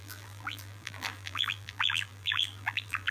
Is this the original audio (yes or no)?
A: no